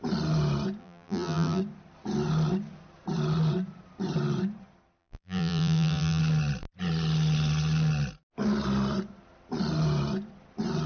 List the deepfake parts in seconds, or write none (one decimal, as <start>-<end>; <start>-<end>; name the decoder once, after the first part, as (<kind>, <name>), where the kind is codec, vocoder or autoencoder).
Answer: 0.8-1.6 (vocoder, BigVGAN v2); 5.0-6.2